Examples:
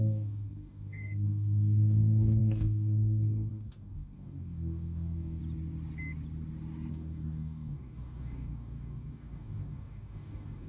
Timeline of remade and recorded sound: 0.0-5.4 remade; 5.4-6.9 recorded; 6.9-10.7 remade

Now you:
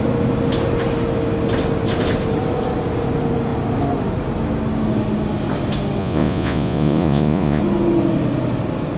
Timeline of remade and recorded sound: 0.0-6.0 recorded; 6.0-7.6 remade; 7.6-9.0 recorded

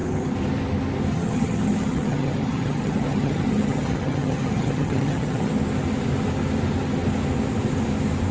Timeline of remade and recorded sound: 0.0-1.1 recorded; 1.1-5.5 remade; 5.5-8.3 recorded